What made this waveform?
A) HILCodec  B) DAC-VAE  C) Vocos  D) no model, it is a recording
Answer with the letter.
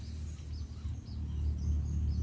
D